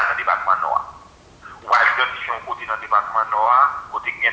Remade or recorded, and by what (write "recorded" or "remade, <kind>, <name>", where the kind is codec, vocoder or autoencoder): remade, vocoder, BigVGAN v2